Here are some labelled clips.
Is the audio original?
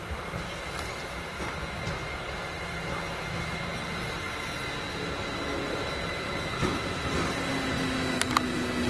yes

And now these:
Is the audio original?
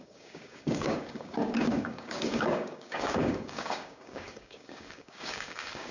no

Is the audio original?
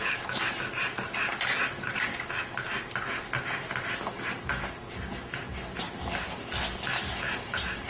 yes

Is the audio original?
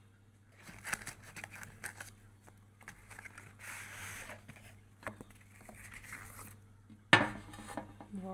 yes